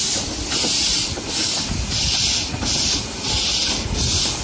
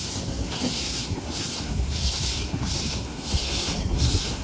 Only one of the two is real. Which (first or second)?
first